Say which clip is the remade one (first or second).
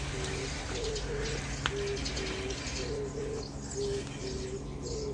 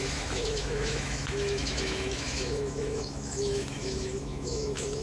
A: second